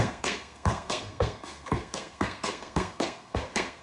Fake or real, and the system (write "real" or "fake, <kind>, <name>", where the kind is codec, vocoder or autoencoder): fake, codec, SNAC